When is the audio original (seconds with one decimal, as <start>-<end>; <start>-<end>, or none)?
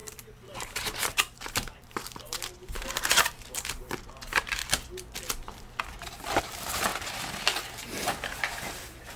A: 0.0-0.6; 4.6-6.4; 6.9-7.7